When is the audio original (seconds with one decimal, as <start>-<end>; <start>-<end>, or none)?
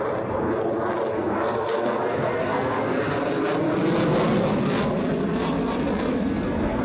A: 0.0-1.1; 3.0-6.1